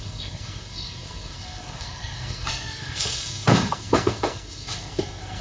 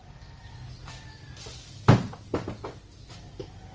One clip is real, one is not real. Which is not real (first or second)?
first